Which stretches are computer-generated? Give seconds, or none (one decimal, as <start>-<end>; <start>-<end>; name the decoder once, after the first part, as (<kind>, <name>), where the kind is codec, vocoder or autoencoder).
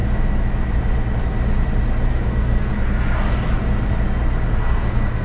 2.1-2.7 (codec, SNAC); 4.6-5.2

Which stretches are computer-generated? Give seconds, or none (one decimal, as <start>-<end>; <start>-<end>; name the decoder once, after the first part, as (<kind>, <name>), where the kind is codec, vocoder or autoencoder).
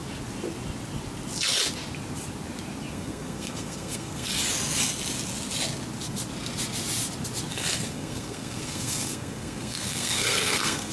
2.9-4.3 (codec, SNAC); 7.5-10.9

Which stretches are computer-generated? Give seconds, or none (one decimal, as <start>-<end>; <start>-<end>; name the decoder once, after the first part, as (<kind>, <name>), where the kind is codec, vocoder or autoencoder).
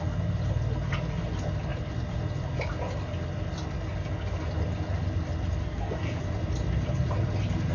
5.6-6.2 (codec, SNAC)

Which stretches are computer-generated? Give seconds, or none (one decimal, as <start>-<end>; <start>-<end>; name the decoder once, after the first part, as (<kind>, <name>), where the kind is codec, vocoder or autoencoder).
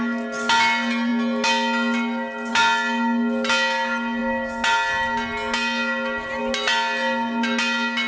none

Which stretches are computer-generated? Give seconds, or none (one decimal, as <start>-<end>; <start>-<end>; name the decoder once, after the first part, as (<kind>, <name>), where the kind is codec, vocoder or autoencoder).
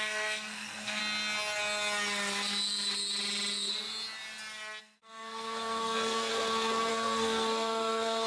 0.0-1.0 (codec, SNAC); 4.8-6.3; 6.9-8.3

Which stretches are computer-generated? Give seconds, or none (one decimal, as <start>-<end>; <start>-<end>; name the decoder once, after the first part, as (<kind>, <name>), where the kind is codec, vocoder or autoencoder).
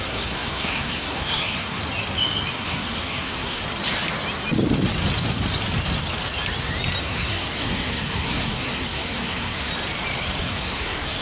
0.0-1.8 (codec, SNAC); 2.5-3.6; 7.0-9.7; 10.4-11.2